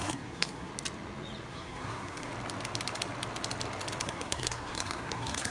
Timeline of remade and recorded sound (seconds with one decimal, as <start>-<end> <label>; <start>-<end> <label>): 0.0-0.7 remade; 0.7-1.5 recorded; 1.5-2.3 remade; 2.3-4.0 recorded; 4.0-5.5 remade